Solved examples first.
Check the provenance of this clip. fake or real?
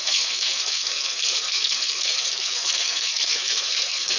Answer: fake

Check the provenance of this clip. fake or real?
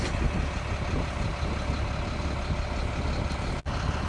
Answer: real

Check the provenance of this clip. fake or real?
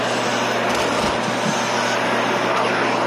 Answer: real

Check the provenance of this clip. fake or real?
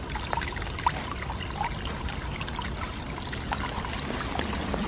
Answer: real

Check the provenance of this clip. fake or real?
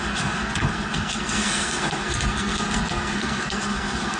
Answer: fake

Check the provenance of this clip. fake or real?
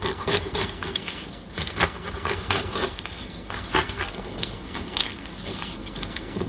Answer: fake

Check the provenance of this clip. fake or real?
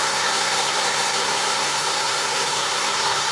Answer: fake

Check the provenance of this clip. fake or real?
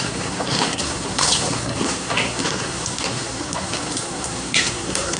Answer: fake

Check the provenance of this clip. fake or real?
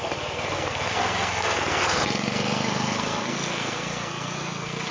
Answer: fake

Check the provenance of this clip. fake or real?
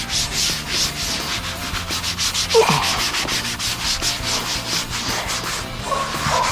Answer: real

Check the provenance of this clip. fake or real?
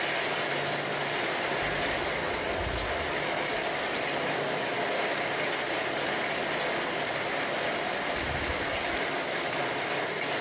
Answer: real